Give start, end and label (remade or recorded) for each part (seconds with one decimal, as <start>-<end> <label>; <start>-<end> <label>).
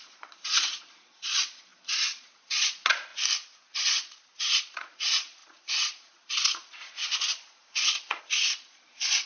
0.0-3.1 remade; 3.1-3.7 recorded; 3.7-9.3 remade